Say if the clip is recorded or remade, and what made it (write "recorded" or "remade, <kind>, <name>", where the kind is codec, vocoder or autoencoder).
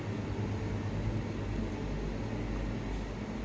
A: recorded